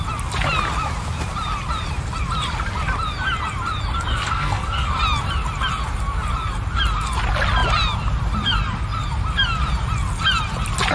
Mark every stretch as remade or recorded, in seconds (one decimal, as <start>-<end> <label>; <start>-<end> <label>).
0.0-4.1 recorded; 4.1-4.9 remade; 4.9-10.9 recorded